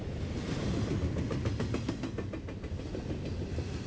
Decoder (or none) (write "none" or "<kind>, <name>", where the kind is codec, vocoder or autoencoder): none